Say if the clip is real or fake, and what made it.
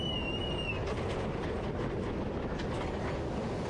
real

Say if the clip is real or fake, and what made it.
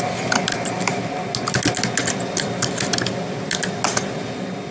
real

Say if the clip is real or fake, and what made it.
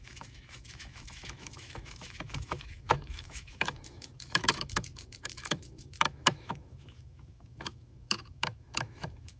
fake, autoencoder, DAC-VAE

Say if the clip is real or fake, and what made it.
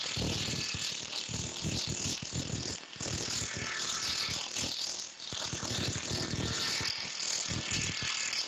real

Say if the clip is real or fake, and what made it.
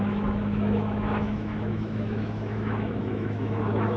fake, autoencoder, DAC-VAE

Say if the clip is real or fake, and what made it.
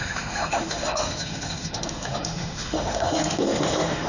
fake, autoencoder, DAC-VAE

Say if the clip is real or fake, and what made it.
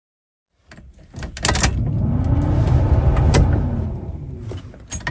real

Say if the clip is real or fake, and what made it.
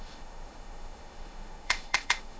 fake, autoencoder, DAC-VAE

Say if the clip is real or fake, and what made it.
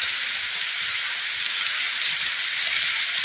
real